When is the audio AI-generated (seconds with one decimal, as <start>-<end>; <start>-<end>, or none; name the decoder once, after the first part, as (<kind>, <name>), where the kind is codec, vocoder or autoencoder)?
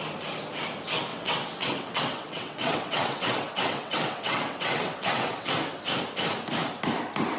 1.1-5.5 (vocoder, WaveNeXt)